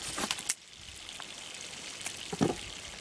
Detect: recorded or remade recorded